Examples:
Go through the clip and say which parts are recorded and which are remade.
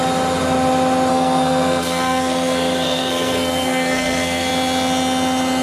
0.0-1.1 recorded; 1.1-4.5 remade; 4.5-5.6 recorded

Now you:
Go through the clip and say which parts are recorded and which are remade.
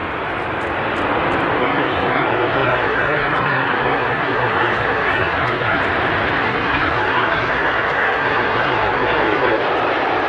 0.0-1.6 recorded; 1.6-5.8 remade; 5.8-6.4 recorded; 6.4-9.6 remade; 9.6-10.3 recorded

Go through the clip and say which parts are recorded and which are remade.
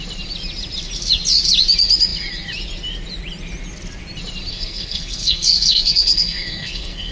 0.0-4.5 recorded; 4.5-7.1 remade